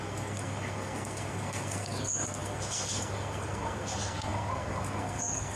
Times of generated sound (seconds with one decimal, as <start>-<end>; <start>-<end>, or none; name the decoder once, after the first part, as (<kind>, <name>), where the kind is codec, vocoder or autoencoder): 0.0-5.6 (codec, SNAC)